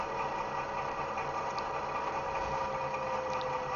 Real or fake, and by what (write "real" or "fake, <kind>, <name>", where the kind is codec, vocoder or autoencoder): real